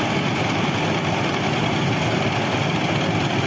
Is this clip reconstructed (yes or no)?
no